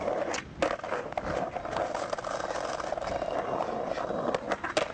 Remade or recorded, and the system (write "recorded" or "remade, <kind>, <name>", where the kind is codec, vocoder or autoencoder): recorded